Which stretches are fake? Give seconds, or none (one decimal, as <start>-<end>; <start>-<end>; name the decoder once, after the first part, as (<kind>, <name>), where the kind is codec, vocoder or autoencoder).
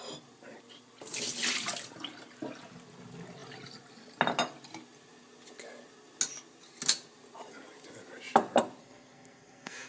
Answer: 8.8-9.9 (codec, SNAC)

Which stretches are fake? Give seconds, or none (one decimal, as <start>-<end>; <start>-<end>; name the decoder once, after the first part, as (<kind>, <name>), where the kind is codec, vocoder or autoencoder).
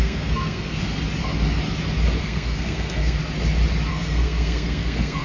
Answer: 0.0-0.8 (codec, SNAC); 2.2-3.2; 3.9-5.2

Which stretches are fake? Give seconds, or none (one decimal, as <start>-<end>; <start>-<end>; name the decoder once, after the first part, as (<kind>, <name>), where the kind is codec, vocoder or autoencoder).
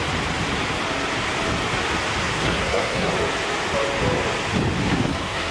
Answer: 2.2-3.1 (codec, SNAC); 4.8-5.5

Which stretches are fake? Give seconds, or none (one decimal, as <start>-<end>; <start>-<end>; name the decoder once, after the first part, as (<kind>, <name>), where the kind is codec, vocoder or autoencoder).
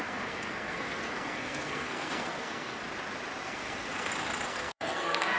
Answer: 0.0-2.8 (codec, SNAC); 3.4-4.1; 4.5-5.4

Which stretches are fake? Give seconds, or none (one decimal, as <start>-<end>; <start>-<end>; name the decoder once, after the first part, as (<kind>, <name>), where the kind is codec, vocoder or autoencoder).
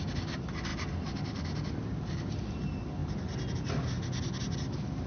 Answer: none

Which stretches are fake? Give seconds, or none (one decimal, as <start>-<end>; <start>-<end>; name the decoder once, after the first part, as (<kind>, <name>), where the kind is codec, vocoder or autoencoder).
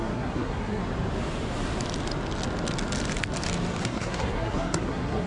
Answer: 0.0-0.8 (codec, SNAC); 3.8-5.3